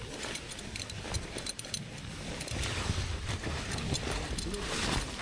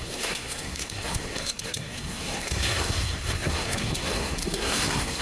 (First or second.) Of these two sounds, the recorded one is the first